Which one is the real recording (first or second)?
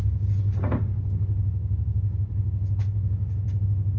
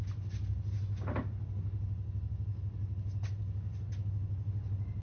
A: second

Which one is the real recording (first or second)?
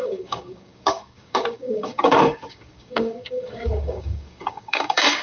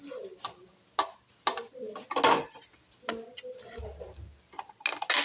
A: second